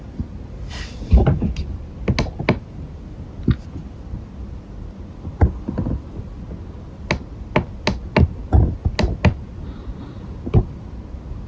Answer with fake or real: real